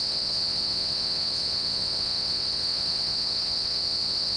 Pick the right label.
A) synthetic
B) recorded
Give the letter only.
A